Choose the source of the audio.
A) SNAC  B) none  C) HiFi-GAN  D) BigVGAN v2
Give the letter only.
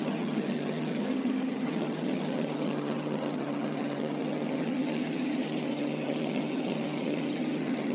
C